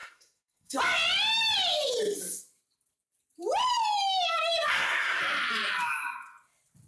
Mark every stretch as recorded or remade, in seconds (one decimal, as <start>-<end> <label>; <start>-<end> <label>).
0.0-0.8 remade; 0.8-4.7 recorded; 4.7-5.2 remade; 5.2-6.9 recorded

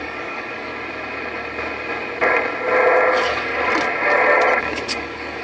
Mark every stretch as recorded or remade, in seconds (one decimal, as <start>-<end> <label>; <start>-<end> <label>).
0.0-0.7 remade; 0.7-3.1 recorded; 3.1-3.5 remade; 3.5-4.6 recorded; 4.6-5.4 remade